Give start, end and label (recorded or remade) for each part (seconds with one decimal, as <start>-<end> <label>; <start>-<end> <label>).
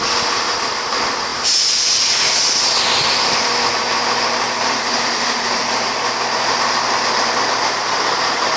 0.0-8.6 recorded